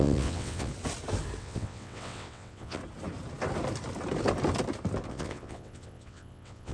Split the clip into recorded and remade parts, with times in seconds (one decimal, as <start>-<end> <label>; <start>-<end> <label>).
0.0-0.7 remade; 0.7-1.4 recorded; 1.4-2.8 remade; 2.8-5.1 recorded; 5.1-6.7 remade